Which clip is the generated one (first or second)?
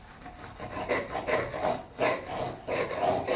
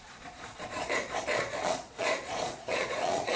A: second